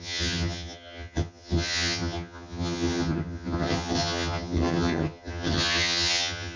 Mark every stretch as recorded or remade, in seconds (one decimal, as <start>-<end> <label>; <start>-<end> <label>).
0.0-6.6 remade